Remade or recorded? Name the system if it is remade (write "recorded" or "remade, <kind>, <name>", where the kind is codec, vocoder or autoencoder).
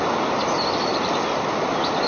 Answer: recorded